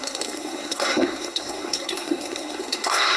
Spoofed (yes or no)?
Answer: yes